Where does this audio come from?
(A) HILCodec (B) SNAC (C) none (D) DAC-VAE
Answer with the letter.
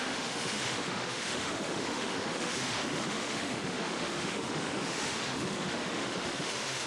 D